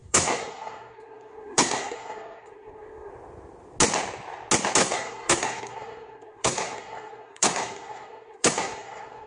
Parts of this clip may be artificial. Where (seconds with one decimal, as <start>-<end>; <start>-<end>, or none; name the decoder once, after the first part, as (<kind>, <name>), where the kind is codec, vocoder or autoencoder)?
0.0-3.1 (codec, SNAC); 4.8-9.3